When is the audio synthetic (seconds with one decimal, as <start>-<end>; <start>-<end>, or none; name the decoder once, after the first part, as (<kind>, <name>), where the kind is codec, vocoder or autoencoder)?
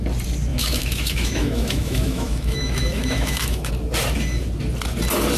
0.5-3.7 (autoencoder, DAC-VAE)